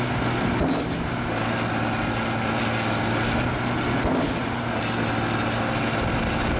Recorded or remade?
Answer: recorded